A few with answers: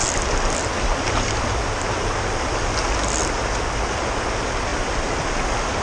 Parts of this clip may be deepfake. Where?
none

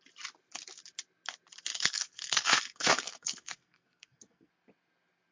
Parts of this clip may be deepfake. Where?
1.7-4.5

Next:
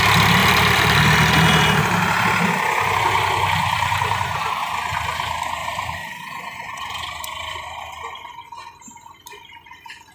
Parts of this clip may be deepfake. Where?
0.4-1.0; 3.6-4.6; 5.6-7.0